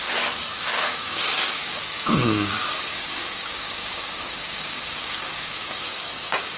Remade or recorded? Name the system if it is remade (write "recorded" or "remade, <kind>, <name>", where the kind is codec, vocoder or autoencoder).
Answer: remade, codec, DAC